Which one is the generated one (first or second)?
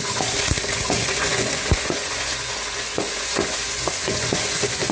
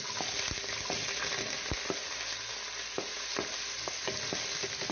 first